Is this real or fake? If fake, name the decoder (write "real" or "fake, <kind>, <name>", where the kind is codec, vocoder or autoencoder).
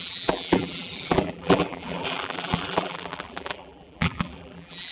fake, vocoder, BigVGAN v2